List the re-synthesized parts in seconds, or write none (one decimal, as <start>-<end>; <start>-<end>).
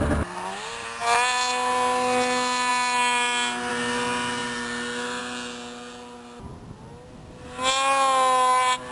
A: none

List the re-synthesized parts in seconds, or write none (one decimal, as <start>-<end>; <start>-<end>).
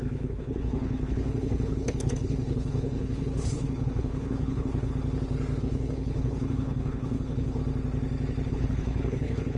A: 0.0-4.9; 5.6-7.6; 8.5-9.6